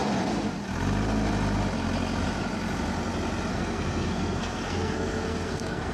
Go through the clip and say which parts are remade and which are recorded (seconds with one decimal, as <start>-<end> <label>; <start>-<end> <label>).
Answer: 0.0-3.5 recorded; 3.5-5.9 remade